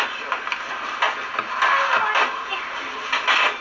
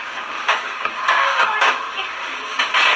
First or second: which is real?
first